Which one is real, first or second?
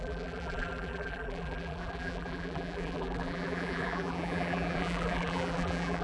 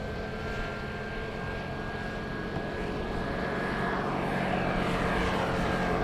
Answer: second